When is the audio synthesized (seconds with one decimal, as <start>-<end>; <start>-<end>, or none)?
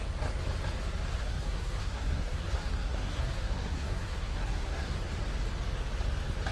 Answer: 1.2-5.1